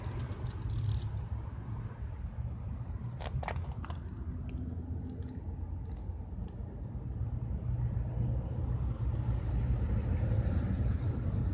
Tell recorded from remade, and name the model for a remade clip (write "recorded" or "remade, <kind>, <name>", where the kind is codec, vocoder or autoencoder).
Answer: recorded